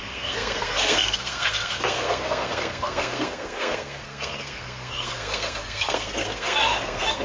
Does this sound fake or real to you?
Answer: fake